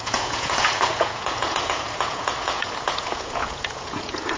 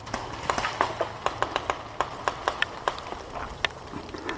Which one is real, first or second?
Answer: second